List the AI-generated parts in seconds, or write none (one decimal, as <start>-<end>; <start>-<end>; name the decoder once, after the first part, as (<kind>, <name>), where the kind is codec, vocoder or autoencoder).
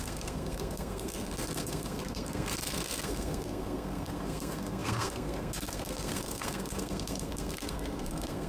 0.0-8.5 (codec, SNAC)